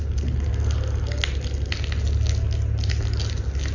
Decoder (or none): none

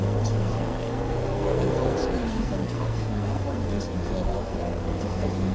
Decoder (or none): codec, SNAC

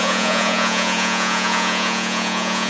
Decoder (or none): vocoder, Vocos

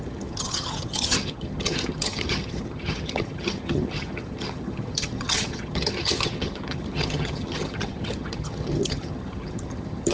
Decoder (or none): vocoder, HiFi-GAN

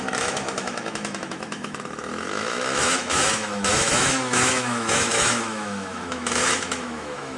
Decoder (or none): autoencoder, DAC-VAE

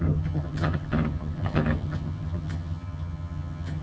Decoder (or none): vocoder, HiFi-GAN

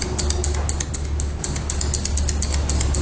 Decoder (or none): none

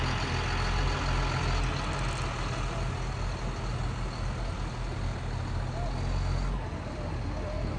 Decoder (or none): none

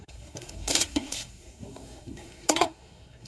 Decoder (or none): codec, SNAC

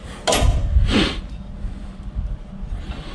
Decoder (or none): none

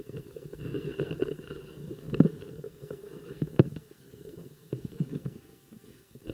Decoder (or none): codec, SNAC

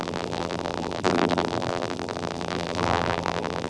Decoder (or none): vocoder, BigVGAN v2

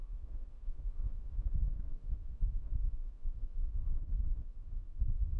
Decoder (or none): autoencoder, DAC-VAE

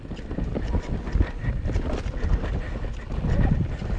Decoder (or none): none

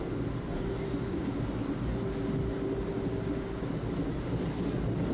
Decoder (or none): none